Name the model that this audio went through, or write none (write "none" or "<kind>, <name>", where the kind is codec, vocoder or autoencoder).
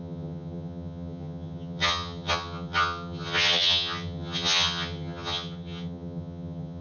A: vocoder, HiFi-GAN